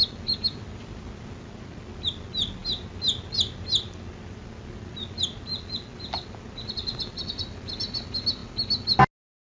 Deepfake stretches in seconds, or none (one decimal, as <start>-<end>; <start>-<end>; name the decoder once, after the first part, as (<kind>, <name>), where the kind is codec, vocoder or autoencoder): none